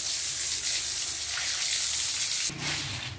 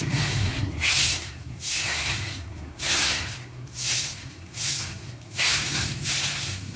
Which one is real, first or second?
first